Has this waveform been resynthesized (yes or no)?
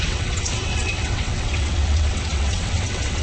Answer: yes